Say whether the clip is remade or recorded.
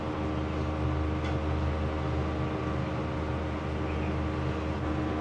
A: recorded